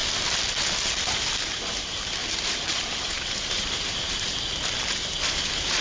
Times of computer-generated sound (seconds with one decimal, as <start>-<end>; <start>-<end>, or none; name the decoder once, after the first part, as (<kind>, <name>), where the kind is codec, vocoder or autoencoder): 2.2-5.8 (vocoder, BigVGAN v2)